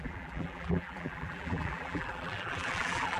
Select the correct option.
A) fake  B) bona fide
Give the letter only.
A